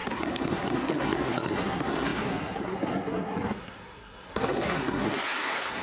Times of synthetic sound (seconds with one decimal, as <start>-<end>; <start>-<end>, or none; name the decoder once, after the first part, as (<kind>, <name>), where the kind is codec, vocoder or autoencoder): 0.0-5.8 (codec, SNAC)